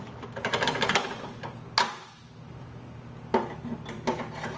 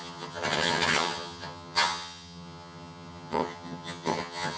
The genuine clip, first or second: first